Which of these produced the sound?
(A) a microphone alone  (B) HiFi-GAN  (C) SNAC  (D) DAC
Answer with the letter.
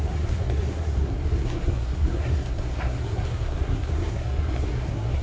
C